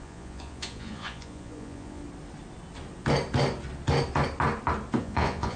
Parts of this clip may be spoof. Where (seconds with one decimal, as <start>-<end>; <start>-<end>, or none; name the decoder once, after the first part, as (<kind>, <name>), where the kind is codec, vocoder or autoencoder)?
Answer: 0.0-2.0 (vocoder, Vocos); 5.0-5.6